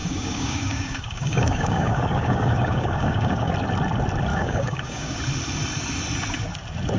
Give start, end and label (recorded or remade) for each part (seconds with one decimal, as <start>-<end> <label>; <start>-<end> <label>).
0.0-3.5 remade; 3.5-4.3 recorded; 4.3-5.2 remade; 5.2-7.0 recorded